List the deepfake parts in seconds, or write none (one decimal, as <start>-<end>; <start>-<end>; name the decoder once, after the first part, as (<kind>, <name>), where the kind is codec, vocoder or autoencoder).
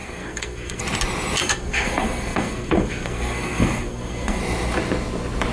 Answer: 0.0-0.8 (codec, SNAC); 1.4-4.4